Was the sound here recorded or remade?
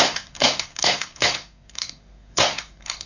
remade